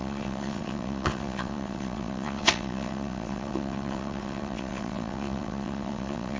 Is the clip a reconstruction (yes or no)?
yes